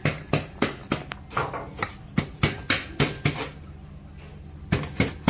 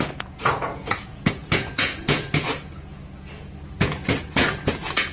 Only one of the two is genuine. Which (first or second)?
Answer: first